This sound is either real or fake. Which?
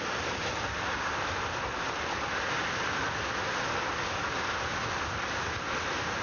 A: real